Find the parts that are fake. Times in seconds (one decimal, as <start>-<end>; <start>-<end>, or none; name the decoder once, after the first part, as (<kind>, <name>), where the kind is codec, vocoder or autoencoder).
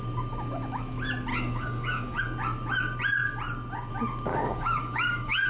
1.3-2.2 (codec, DAC); 4.3-5.5